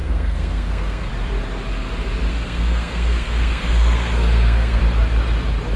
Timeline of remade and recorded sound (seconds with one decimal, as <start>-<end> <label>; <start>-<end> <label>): 0.0-1.1 remade; 1.1-2.3 recorded; 2.3-4.8 remade; 4.8-5.8 recorded